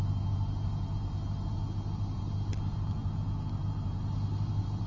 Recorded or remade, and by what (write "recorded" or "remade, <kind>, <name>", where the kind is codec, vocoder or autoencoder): recorded